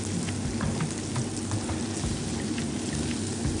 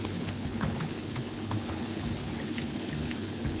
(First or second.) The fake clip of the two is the second